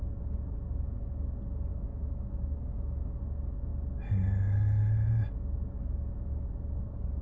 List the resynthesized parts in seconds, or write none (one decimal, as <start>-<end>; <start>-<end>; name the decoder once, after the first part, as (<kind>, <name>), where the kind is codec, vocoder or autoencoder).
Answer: 1.7-3.2 (autoencoder, DAC-VAE)